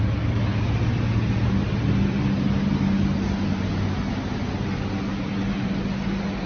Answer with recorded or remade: recorded